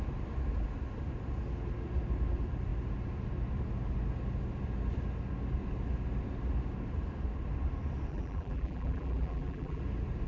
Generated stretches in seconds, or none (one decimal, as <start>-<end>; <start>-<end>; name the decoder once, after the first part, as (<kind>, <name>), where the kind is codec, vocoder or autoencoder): 8.1-9.8 (vocoder, BigVGAN v2)